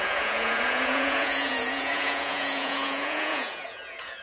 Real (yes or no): no